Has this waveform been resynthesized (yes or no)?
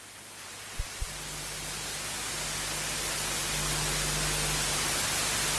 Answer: no